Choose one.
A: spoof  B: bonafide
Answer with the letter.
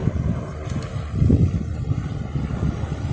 B